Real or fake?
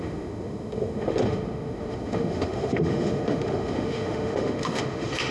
fake